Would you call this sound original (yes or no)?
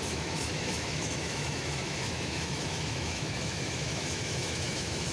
no